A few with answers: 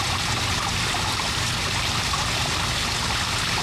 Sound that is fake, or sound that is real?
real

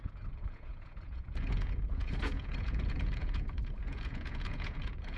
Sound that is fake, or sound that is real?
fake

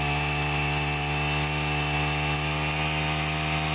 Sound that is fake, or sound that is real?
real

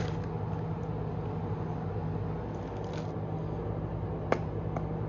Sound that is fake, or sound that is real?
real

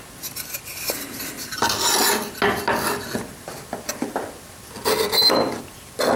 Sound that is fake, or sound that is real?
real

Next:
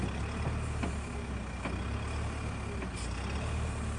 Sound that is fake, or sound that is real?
real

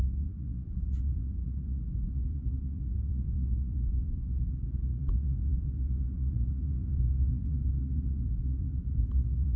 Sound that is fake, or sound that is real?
fake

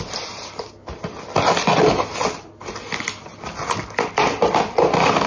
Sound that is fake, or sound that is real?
real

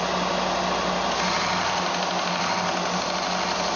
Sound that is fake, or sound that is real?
real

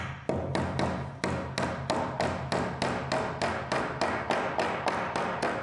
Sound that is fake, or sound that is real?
real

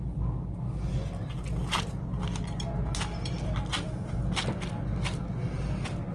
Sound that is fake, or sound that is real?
real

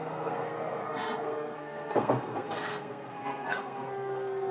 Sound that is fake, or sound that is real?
fake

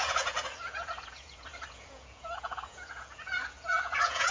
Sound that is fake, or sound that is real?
fake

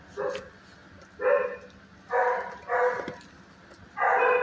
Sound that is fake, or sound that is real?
real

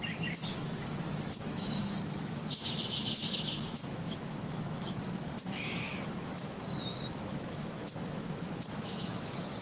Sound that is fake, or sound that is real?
fake